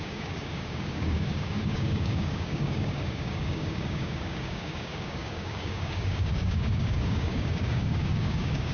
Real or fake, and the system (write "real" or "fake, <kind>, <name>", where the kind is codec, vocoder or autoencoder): fake, codec, DAC